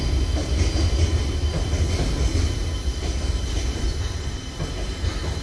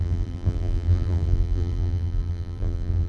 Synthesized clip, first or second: second